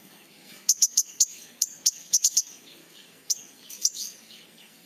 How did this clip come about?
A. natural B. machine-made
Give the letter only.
B